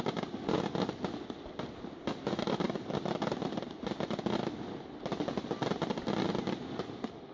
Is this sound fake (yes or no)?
no